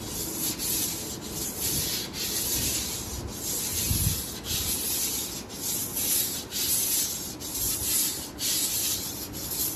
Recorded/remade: recorded